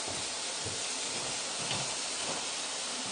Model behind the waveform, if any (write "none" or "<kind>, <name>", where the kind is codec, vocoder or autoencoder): none